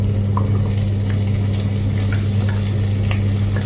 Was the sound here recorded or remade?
recorded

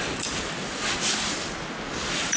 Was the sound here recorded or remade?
recorded